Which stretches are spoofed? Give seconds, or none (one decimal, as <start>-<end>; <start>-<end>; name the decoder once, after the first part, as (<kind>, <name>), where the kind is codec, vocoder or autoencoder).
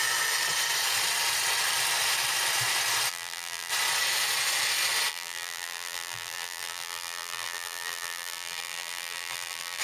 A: 3.1-3.7 (vocoder, BigVGAN v2); 5.1-9.8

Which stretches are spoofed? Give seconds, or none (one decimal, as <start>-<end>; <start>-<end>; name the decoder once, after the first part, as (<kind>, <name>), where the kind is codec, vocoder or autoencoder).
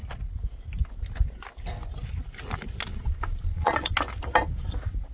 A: 2.9-3.9 (vocoder, Vocos)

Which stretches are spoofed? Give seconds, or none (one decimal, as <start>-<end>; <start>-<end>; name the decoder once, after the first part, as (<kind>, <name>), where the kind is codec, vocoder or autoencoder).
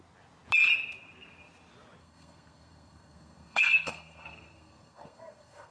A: 2.0-5.7 (codec, SNAC)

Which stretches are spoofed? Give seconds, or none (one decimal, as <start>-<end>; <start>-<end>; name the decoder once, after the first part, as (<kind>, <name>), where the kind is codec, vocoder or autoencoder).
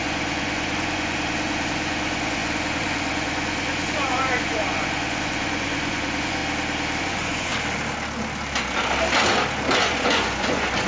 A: 0.0-6.4 (vocoder, Vocos); 7.0-7.5; 9.8-10.9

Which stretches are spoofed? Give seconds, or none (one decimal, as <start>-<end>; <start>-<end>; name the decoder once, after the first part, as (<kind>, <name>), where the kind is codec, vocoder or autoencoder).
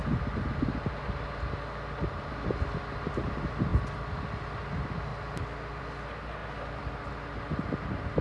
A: none